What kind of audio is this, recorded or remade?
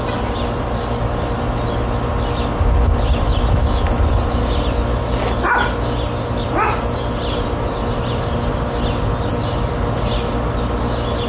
recorded